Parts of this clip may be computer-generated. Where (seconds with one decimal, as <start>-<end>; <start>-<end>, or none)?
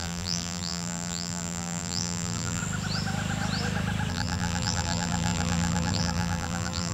0.0-2.6; 4.1-6.9